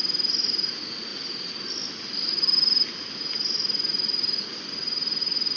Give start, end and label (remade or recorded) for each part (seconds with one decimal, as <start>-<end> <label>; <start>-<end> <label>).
0.0-5.6 recorded